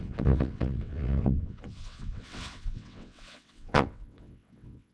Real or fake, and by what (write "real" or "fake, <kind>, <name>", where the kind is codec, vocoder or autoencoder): fake, vocoder, WaveNeXt